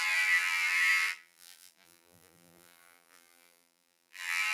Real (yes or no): no